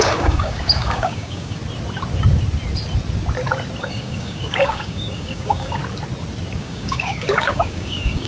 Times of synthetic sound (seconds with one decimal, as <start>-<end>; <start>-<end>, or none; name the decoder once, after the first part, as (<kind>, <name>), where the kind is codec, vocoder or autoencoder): 0.0-1.6 (codec, DAC); 3.8-5.8; 6.6-8.3